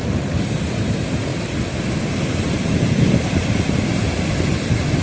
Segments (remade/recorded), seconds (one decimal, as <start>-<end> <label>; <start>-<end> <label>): 0.0-5.0 recorded